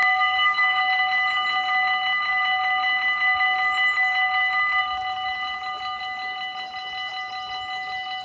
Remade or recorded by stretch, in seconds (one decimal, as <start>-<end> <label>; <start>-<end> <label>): 0.0-0.8 remade; 0.8-8.2 recorded